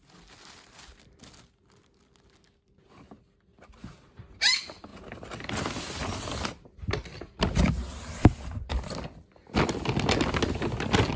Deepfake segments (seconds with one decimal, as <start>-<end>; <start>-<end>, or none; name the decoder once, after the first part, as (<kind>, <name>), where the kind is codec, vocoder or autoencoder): none